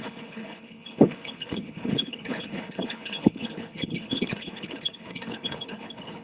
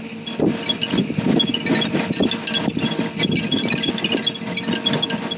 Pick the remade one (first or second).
first